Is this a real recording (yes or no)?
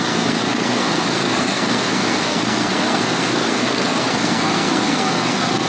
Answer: no